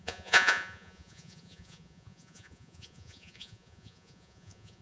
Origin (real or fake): fake